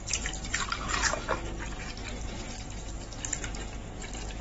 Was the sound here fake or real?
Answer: real